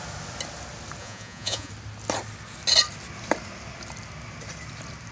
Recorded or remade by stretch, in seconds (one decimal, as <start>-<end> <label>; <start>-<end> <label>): 0.0-1.0 recorded; 1.0-1.7 remade; 1.7-5.1 recorded